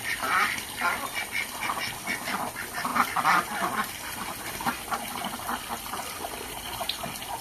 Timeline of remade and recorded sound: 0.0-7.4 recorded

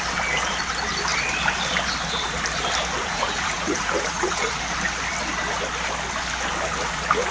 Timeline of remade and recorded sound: 0.0-3.0 recorded; 3.0-4.6 remade; 4.6-7.3 recorded

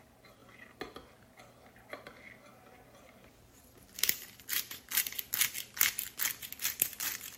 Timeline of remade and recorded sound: 0.0-2.5 recorded; 2.5-5.3 remade; 5.3-7.4 recorded

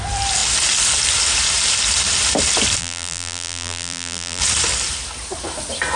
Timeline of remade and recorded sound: 0.0-2.8 recorded; 2.8-4.4 remade; 4.4-6.0 recorded

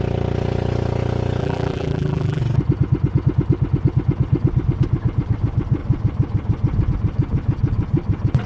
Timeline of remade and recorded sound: 0.0-1.4 recorded; 1.4-2.4 remade; 2.4-8.5 recorded

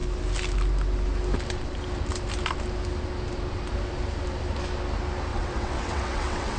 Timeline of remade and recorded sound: 0.0-5.3 recorded; 5.3-6.6 remade

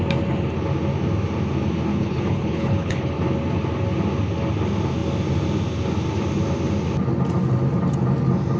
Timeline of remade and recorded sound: 0.0-1.9 recorded; 1.9-3.1 remade; 3.1-8.6 recorded